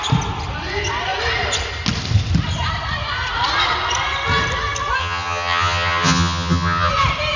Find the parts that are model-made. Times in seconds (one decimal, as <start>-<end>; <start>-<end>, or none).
5.0-6.9